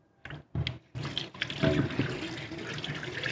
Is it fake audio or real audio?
real